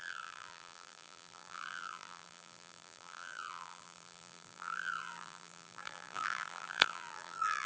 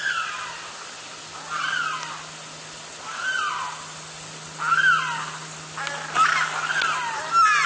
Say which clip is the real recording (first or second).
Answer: second